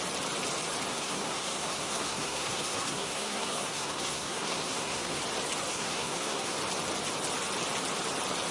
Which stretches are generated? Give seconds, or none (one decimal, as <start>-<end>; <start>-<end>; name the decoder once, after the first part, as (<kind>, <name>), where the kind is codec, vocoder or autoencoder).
0.9-5.2 (codec, SNAC); 5.7-6.6